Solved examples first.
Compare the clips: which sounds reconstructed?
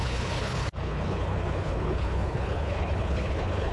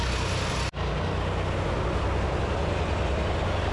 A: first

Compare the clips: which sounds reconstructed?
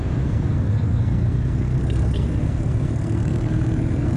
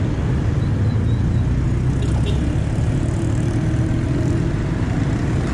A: first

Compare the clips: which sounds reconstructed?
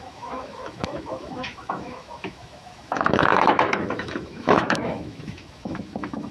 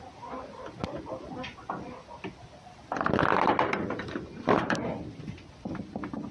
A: first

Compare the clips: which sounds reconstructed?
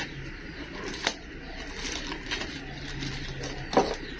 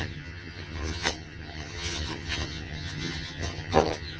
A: second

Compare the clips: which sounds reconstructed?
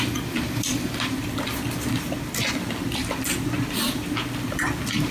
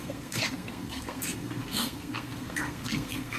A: second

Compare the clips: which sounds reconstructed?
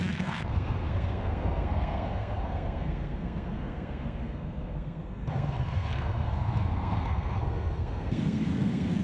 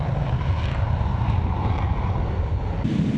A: first